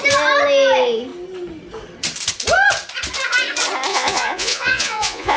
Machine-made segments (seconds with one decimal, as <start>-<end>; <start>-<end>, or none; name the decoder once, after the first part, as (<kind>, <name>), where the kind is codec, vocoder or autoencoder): 3.9-5.4 (vocoder, Vocos)